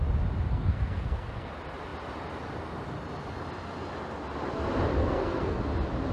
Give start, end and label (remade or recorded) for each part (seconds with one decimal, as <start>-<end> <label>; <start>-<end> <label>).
0.0-0.5 recorded; 0.5-1.5 remade; 1.5-5.0 recorded; 5.0-5.6 remade; 5.6-6.1 recorded